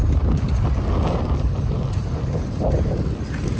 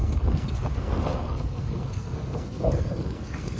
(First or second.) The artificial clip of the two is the second